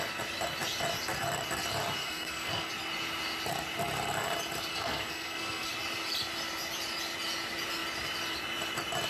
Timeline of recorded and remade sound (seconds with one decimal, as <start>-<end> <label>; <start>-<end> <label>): 0.0-2.0 recorded; 2.0-2.7 remade; 2.7-4.7 recorded; 4.7-5.7 remade; 5.7-9.1 recorded